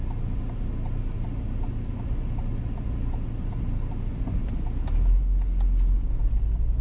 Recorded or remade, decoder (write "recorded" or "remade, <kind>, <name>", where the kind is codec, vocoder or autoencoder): recorded